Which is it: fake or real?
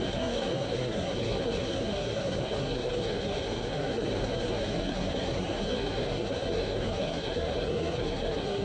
fake